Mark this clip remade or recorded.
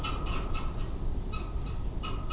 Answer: recorded